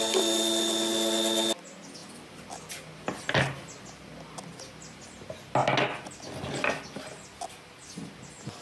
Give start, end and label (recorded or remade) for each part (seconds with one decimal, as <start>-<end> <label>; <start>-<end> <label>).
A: 0.0-8.6 recorded